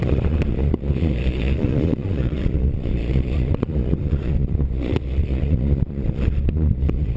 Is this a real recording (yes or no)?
no